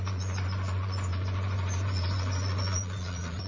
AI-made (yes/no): yes